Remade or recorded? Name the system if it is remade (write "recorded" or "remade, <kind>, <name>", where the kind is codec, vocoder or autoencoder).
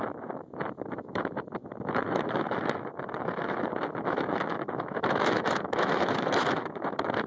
remade, autoencoder, DAC-VAE